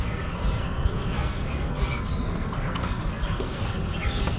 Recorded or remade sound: remade